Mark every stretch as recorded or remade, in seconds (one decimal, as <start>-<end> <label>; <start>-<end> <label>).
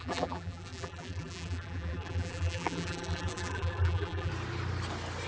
0.0-4.3 remade; 4.3-5.3 recorded